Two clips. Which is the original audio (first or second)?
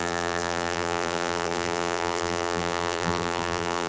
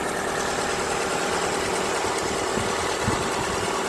second